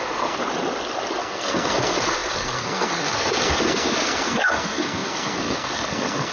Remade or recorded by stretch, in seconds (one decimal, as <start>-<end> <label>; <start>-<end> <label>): 0.0-0.4 remade; 0.4-1.2 recorded; 1.2-6.3 remade